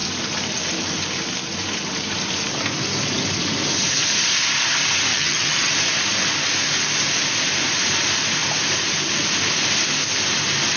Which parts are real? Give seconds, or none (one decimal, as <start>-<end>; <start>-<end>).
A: 0.0-5.1; 5.7-10.8